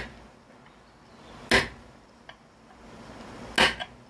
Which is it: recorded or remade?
recorded